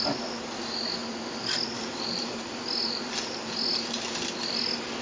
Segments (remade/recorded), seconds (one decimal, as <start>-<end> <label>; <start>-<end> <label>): 0.0-5.0 recorded